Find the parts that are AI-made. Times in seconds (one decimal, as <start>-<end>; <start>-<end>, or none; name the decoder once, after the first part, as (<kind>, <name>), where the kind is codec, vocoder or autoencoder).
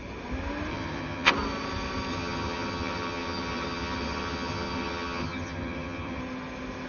0.7-1.3 (vocoder, HiFi-GAN); 2.1-6.2